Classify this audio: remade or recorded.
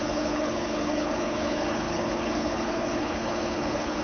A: remade